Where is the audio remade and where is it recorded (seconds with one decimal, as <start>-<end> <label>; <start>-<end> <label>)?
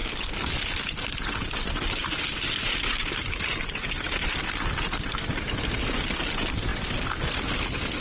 0.0-8.0 recorded